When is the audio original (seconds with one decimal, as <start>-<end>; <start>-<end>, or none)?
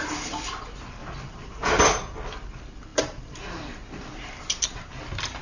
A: 1.0-1.8